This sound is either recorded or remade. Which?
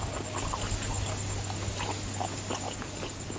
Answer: recorded